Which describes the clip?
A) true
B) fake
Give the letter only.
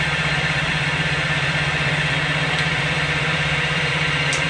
B